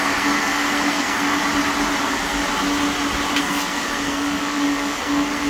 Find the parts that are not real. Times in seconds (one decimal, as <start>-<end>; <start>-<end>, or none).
0.0-1.4; 2.0-2.4; 3.4-5.5